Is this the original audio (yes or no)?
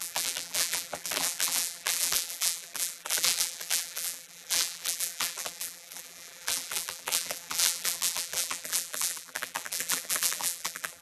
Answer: no